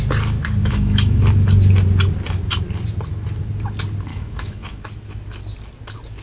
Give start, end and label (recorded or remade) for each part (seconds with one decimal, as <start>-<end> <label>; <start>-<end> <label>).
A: 0.0-0.6 recorded; 0.6-1.2 remade; 1.2-4.1 recorded; 4.1-4.8 remade; 4.8-6.2 recorded